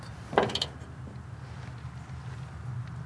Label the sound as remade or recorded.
recorded